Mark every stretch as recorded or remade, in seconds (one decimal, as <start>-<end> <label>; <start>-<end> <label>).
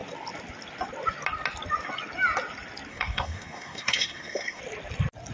0.0-2.9 recorded; 2.9-4.6 remade; 4.6-5.3 recorded